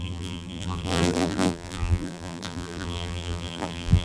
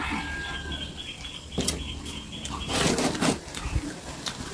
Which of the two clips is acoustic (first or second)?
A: second